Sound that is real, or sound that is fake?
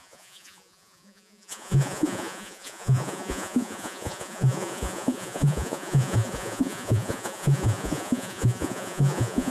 fake